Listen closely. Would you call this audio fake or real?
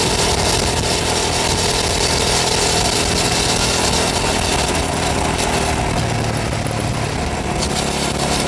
real